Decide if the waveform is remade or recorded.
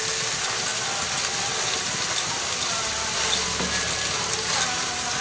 recorded